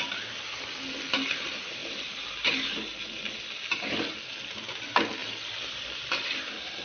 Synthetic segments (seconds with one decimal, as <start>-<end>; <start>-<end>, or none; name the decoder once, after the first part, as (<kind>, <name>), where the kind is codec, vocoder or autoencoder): 1.8-4.2 (vocoder, BigVGAN v2); 5.2-6.8